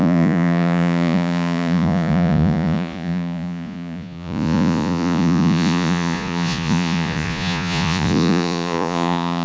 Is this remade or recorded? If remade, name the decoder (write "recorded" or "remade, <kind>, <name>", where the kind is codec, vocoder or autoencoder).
remade, vocoder, Vocos